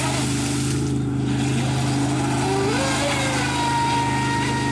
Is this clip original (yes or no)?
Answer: yes